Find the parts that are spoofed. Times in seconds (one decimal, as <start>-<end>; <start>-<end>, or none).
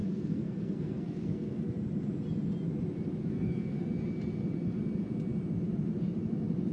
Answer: 0.0-1.6; 3.3-3.9